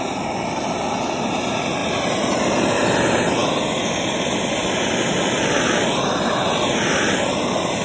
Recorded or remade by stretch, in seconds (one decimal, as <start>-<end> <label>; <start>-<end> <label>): 0.0-7.8 recorded